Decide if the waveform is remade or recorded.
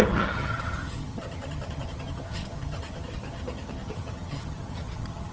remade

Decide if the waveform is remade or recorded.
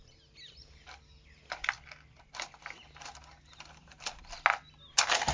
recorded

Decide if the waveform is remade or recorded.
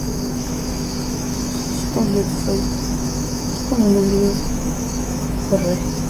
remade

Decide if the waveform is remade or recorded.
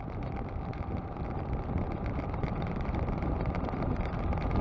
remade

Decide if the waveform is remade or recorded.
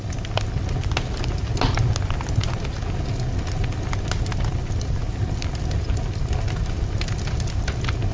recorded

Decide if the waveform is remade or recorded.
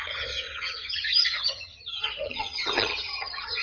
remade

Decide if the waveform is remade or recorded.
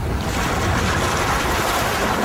recorded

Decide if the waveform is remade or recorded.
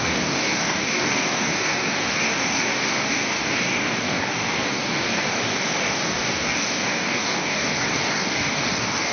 remade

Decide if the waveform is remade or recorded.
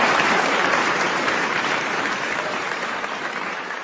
remade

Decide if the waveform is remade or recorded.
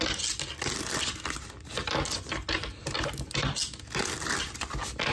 recorded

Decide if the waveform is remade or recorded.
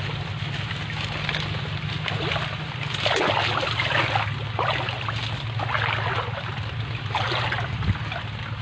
recorded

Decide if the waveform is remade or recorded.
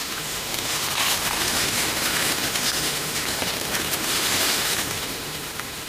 remade